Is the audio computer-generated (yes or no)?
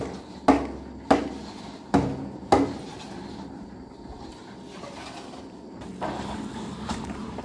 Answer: no